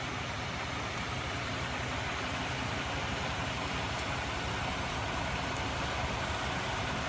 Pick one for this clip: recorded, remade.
recorded